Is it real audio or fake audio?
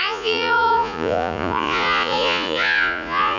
fake